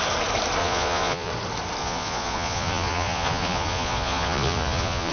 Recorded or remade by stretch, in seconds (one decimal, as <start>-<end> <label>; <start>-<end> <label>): 0.0-0.6 recorded; 0.6-1.3 remade; 1.3-1.8 recorded; 1.8-5.1 remade